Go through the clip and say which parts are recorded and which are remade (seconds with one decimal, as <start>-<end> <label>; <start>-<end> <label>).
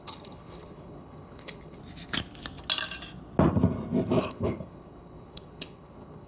0.0-1.8 remade; 1.8-4.2 recorded; 4.2-6.3 remade